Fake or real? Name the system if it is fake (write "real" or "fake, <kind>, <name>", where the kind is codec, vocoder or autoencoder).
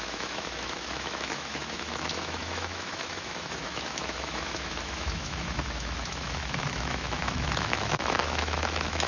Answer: fake, autoencoder, DAC-VAE